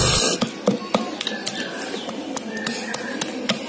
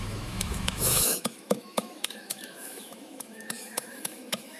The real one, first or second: first